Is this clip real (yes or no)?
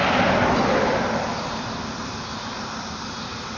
yes